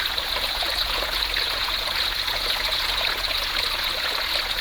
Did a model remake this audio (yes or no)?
yes